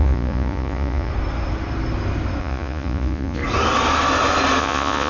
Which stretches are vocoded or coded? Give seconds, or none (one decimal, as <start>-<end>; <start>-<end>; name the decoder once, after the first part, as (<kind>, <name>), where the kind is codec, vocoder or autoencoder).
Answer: 0.0-1.1 (vocoder, Vocos); 2.4-3.4; 4.6-5.1